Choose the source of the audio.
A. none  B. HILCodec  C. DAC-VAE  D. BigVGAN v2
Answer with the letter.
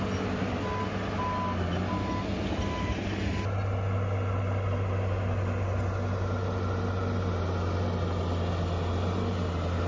A